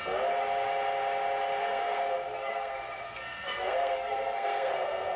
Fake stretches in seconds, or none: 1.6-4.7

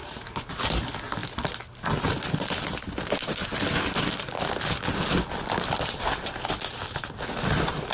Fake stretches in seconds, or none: 0.0-0.5

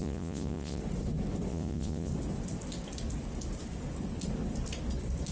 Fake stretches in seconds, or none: 0.0-0.8; 1.5-2.1

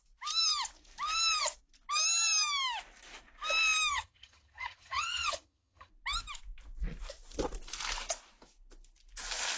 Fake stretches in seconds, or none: 3.9-5.9

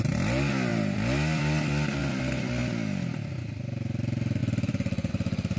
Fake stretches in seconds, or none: 0.7-2.0; 4.4-5.1

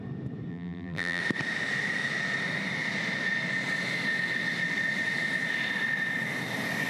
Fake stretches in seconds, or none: 0.5-1.2